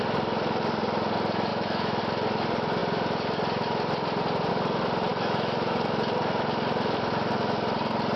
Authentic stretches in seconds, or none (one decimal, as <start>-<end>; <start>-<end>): 0.0-1.5; 2.0-5.1; 6.0-8.2